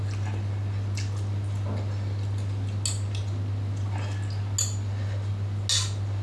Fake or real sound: real